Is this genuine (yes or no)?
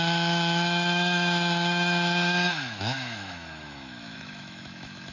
no